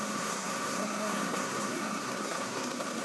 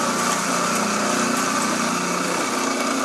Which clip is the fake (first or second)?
first